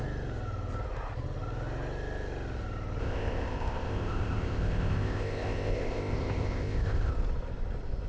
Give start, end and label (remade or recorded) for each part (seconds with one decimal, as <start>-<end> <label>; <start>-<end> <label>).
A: 0.0-3.0 recorded; 3.0-7.1 remade; 7.1-8.1 recorded